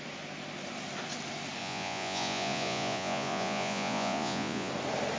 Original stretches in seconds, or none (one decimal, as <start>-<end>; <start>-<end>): 0.0-1.6; 4.7-5.2